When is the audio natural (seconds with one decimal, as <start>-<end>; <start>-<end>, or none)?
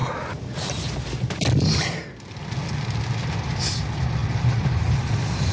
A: 0.0-4.2; 5.0-5.5